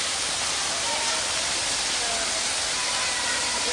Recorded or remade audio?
recorded